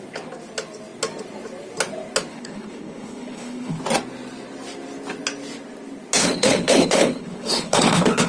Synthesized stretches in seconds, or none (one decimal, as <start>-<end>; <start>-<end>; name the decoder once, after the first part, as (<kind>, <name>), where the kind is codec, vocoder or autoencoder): 2.3-3.8 (codec, HILCodec); 6.2-8.3